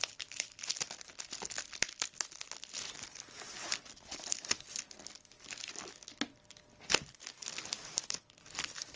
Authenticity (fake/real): real